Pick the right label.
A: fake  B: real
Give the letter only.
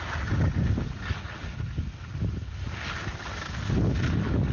B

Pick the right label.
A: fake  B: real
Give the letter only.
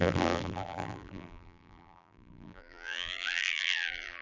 A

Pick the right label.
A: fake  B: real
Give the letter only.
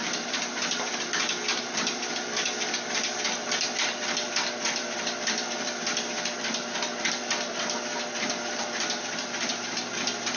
B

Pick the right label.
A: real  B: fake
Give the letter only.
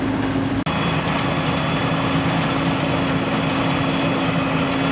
A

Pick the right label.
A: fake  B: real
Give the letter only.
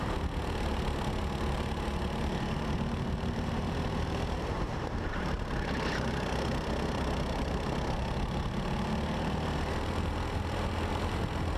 A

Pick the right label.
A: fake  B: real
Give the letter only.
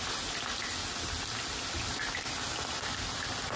B